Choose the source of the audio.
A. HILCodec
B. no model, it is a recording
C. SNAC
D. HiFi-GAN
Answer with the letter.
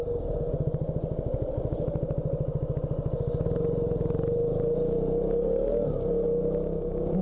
B